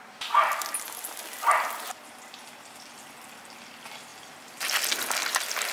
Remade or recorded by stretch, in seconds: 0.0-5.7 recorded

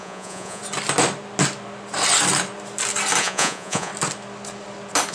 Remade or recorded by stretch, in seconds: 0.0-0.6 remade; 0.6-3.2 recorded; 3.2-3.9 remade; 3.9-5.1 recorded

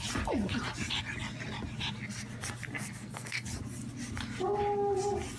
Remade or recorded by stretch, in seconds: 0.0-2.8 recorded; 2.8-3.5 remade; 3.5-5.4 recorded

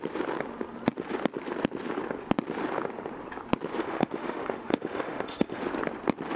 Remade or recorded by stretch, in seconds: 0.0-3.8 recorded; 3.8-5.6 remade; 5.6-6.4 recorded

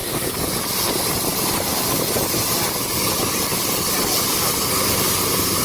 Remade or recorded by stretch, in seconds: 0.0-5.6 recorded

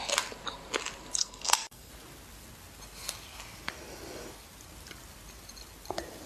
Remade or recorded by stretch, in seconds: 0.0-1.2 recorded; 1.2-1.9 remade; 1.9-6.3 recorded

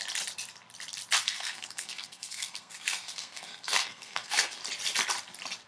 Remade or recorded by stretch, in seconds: 0.0-1.2 recorded; 1.2-4.6 remade; 4.6-5.7 recorded

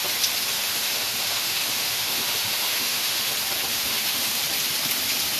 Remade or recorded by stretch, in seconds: 0.0-0.5 recorded; 0.5-3.3 remade; 3.3-3.7 recorded; 3.7-4.4 remade; 4.4-5.4 recorded